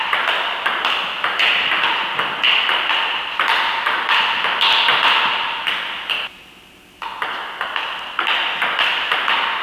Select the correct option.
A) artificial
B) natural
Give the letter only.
B